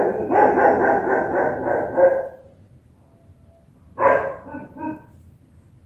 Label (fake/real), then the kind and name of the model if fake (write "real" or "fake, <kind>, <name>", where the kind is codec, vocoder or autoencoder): real